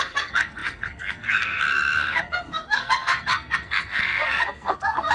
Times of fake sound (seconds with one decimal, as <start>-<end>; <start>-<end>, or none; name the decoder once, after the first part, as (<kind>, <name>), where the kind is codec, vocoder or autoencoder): 0.0-5.1 (codec, SNAC)